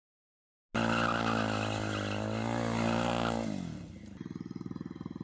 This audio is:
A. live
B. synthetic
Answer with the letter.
A